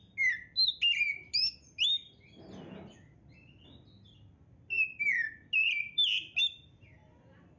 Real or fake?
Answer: real